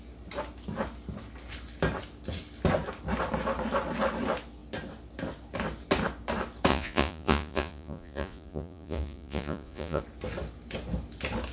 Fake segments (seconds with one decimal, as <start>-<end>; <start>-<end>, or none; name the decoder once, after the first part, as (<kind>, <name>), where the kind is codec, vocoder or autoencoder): 6.7-10.0 (vocoder, Vocos)